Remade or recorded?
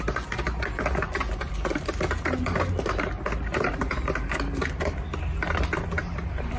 recorded